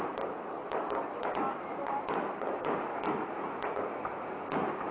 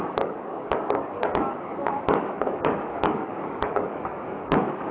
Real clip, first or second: first